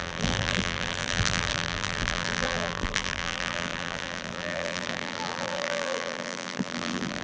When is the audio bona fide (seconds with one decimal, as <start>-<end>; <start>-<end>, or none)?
none